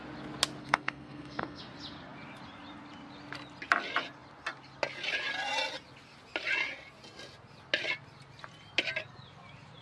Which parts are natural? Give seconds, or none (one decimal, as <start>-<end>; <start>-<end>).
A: 0.0-0.6; 1.6-9.8